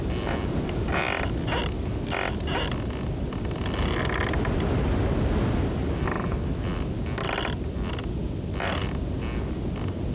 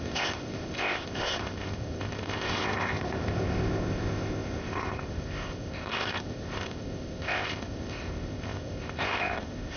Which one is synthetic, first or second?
second